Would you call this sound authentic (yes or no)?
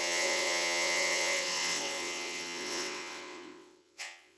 no